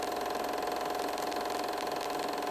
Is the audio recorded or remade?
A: recorded